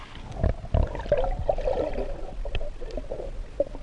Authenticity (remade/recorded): recorded